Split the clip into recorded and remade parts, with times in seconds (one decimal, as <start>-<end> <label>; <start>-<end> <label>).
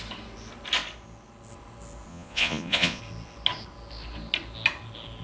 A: 0.0-2.1 recorded; 2.1-3.0 remade; 3.0-5.2 recorded